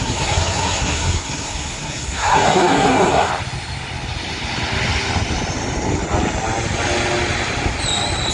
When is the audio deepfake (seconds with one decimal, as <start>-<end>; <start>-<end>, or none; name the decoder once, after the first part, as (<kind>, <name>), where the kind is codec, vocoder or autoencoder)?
0.0-3.3 (codec, SNAC)